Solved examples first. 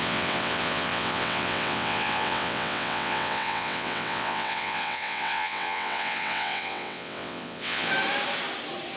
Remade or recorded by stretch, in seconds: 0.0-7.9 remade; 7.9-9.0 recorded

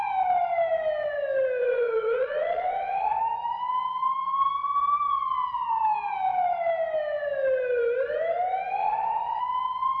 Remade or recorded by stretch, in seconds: 0.0-1.6 recorded; 1.6-3.2 remade; 3.2-8.8 recorded; 8.8-9.4 remade; 9.4-10.0 recorded